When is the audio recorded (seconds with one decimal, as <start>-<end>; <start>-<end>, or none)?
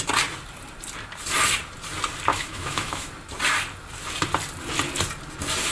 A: 0.0-2.3; 3.1-5.7